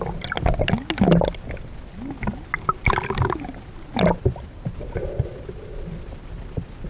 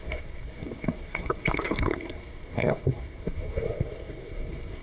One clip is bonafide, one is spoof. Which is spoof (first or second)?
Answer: second